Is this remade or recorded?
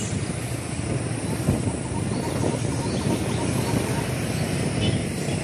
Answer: recorded